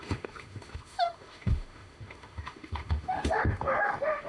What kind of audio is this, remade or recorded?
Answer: remade